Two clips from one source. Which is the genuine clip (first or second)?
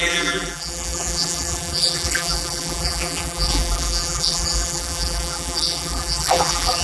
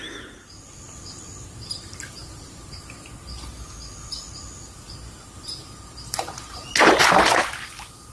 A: second